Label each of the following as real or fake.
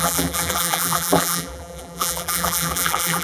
fake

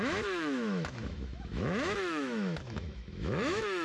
fake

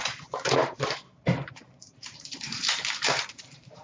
fake